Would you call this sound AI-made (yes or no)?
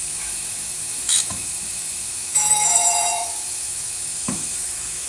yes